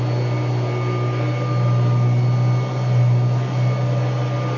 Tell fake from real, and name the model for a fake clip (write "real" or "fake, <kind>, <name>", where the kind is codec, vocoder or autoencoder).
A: real